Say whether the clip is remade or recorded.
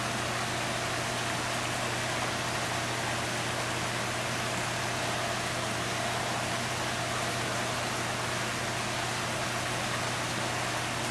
recorded